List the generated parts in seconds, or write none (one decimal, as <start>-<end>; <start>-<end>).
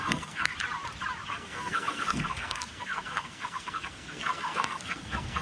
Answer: 0.0-0.5; 1.3-5.4